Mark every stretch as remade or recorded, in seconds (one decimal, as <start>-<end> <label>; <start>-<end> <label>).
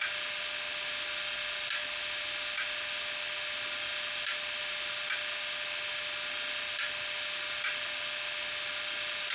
0.0-9.3 recorded